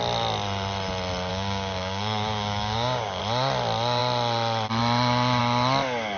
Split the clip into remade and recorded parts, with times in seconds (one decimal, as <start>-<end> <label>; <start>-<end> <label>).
0.0-1.3 recorded; 1.3-3.2 remade; 3.2-6.2 recorded